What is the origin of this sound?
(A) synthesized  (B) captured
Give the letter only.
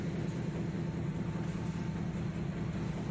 B